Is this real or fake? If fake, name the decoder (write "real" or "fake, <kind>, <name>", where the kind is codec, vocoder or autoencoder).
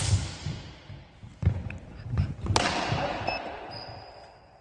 real